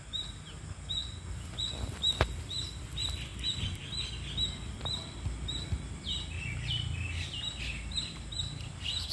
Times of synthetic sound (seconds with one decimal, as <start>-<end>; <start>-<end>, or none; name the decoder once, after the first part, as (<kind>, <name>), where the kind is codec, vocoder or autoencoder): none